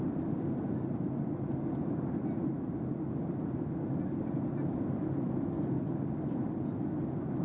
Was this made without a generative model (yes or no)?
yes